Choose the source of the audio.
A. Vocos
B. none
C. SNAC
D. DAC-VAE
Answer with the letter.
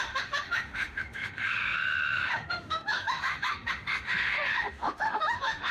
D